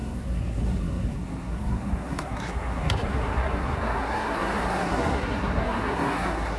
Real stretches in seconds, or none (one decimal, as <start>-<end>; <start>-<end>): none